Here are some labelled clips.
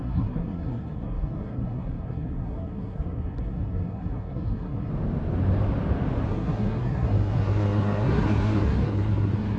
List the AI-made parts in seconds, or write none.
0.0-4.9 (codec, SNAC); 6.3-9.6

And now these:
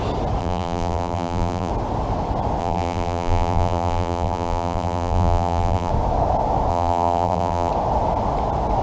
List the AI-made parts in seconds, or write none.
0.4-1.7 (vocoder, BigVGAN v2); 2.6-5.9; 6.7-7.7

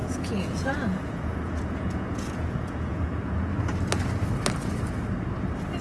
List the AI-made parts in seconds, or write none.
0.0-3.5 (vocoder, Vocos)

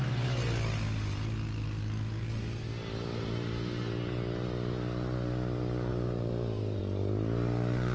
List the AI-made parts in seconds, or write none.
5.9-6.8 (vocoder, BigVGAN v2)

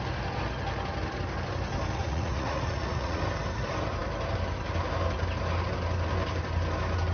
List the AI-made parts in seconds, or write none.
2.0-3.2 (vocoder, Vocos)